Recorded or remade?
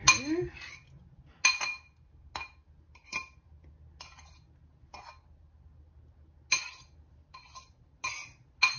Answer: recorded